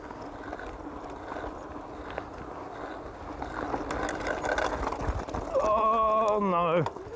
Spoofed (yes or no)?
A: no